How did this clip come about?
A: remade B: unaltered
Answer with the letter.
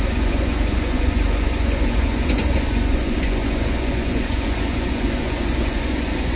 A